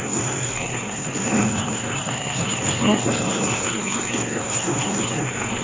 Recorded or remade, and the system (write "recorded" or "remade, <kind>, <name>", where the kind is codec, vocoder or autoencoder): remade, codec, SNAC